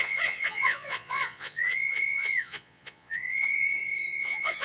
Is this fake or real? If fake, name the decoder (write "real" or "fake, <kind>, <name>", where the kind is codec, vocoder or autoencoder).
fake, vocoder, Vocos